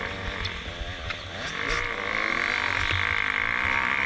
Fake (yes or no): no